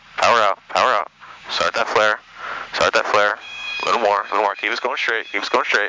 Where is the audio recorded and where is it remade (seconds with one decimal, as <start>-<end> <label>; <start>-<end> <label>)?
0.0-1.0 recorded; 1.0-1.8 remade; 1.8-3.3 recorded; 3.3-5.4 remade; 5.4-5.9 recorded